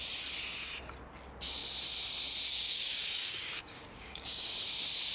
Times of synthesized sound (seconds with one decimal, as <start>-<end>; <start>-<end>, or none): 2.5-4.4